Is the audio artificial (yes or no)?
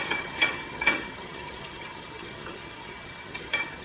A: yes